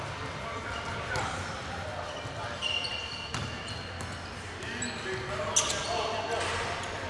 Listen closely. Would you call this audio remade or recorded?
recorded